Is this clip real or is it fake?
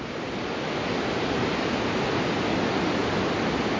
real